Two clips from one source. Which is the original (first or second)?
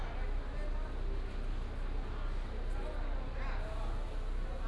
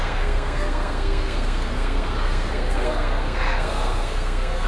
first